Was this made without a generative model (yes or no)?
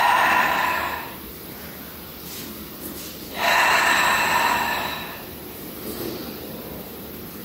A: yes